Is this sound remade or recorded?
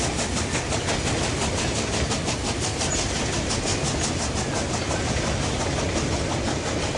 recorded